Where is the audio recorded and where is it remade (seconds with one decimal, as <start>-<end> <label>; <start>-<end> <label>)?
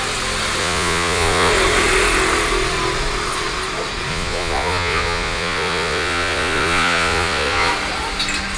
0.0-0.6 recorded; 0.6-1.5 remade; 1.5-4.1 recorded; 4.1-7.7 remade; 7.7-8.6 recorded